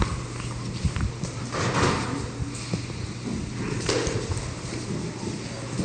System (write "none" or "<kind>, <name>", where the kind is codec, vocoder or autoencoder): none